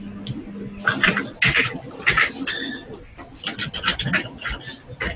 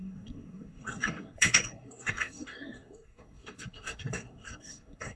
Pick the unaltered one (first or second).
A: first